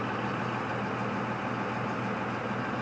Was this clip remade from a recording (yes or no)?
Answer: no